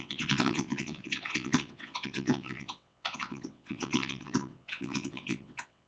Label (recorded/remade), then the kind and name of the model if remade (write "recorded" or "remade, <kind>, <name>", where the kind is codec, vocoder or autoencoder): remade, vocoder, WaveNeXt